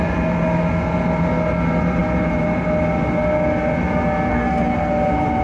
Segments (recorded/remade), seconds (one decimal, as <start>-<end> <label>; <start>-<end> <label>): 0.0-4.3 recorded; 4.3-4.9 remade; 4.9-5.4 recorded